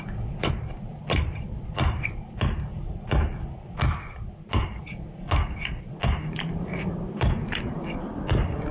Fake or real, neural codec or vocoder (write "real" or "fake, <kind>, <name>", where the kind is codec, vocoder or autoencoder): real